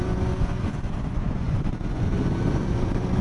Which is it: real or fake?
fake